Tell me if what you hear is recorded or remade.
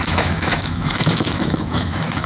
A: remade